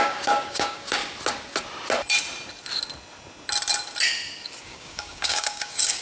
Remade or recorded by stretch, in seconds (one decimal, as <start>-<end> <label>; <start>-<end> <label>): 0.0-1.0 remade; 1.0-4.6 recorded; 4.6-6.0 remade